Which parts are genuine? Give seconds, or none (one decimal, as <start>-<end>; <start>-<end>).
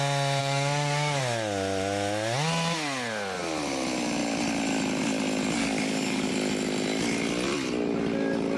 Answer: 0.0-0.4; 1.2-5.6; 6.3-8.6